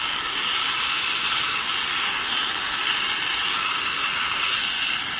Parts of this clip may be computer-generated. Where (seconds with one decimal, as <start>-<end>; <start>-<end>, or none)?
0.0-0.5; 3.6-4.0